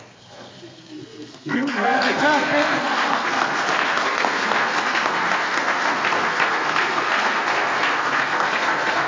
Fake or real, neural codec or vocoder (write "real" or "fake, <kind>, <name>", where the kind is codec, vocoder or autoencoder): fake, codec, SNAC